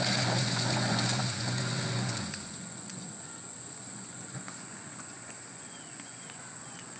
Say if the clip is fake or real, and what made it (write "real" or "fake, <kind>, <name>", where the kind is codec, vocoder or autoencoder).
fake, vocoder, Vocos